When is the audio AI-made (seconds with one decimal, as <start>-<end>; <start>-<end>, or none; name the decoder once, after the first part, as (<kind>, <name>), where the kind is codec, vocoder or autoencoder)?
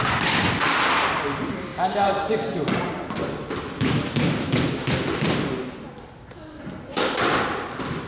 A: none